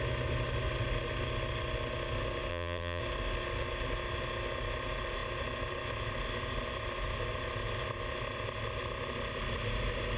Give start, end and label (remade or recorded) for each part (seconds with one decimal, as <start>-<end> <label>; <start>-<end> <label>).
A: 0.0-2.5 recorded; 2.5-3.0 remade; 3.0-10.2 recorded